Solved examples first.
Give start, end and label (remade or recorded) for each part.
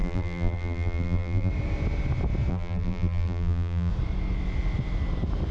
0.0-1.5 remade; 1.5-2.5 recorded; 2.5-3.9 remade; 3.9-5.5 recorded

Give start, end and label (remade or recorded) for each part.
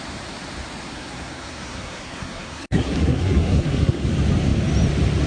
0.0-0.9 recorded; 0.9-4.1 remade; 4.1-5.3 recorded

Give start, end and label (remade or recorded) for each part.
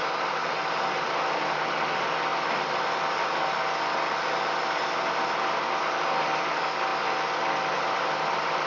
0.0-2.3 recorded; 2.3-3.2 remade; 3.2-6.9 recorded; 6.9-8.7 remade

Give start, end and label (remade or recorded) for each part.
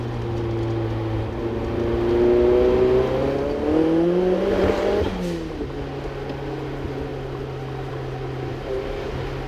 0.0-9.5 recorded